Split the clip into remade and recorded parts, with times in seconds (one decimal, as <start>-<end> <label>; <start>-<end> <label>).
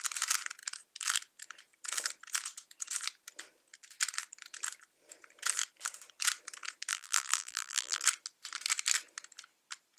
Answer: 0.0-6.9 recorded; 6.9-8.0 remade; 8.0-10.0 recorded